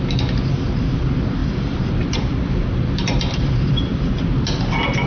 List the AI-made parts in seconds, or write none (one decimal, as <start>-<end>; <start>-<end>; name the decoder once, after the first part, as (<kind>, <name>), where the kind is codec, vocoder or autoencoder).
1.4-4.1 (vocoder, BigVGAN v2)